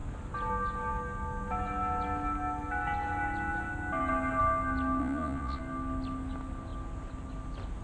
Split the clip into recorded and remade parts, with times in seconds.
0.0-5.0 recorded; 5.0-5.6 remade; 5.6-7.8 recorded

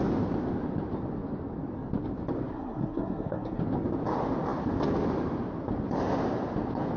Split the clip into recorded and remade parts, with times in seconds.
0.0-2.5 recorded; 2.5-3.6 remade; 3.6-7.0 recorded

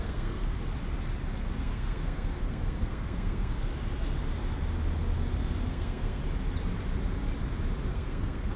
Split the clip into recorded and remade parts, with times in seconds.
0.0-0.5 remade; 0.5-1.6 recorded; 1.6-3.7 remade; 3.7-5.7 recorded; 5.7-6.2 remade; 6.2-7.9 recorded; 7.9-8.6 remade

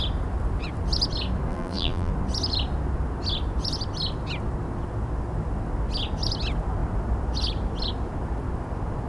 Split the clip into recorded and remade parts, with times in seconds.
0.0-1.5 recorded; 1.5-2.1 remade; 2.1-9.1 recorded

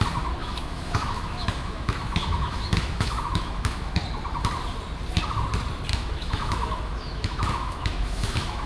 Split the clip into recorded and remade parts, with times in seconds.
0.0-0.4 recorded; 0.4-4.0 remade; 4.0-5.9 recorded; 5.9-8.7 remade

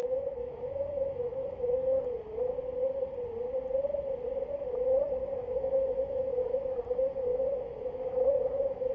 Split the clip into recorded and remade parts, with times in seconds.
0.0-2.0 remade; 2.0-5.2 recorded; 5.2-6.4 remade; 6.4-7.3 recorded; 7.3-8.9 remade

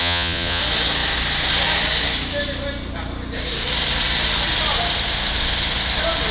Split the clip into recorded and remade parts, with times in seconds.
0.0-0.6 remade; 0.6-6.3 recorded

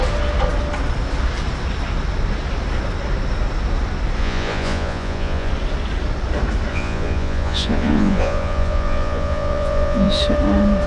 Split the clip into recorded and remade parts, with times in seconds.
0.0-4.2 recorded; 4.2-5.5 remade; 5.5-6.7 recorded; 6.7-10.2 remade; 10.2-10.9 recorded